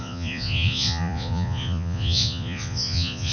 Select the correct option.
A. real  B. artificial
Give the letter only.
B